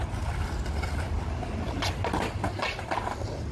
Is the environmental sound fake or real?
real